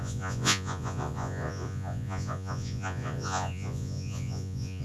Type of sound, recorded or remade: remade